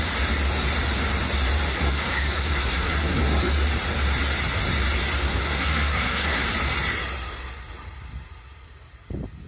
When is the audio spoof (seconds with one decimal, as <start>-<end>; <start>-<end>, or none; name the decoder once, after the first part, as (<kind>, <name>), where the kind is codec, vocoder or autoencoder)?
1.7-3.4 (codec, SNAC); 5.2-6.4